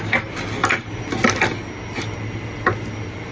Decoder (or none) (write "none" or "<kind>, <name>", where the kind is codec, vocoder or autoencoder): none